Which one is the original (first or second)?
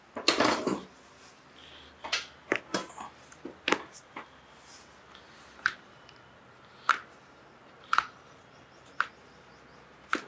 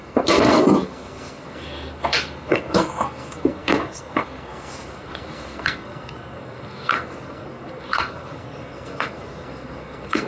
first